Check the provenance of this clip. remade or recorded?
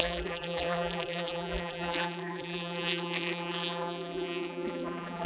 remade